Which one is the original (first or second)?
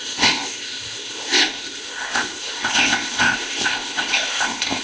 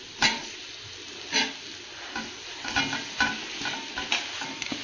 second